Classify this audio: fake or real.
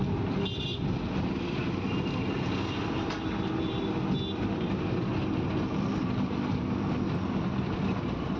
real